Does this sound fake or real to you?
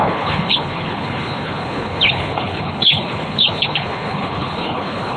fake